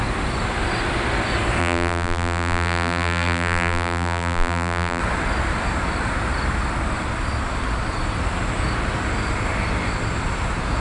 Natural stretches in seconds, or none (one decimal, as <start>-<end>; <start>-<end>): 0.0-1.6; 5.0-10.8